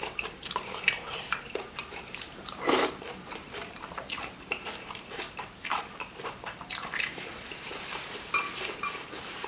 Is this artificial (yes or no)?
yes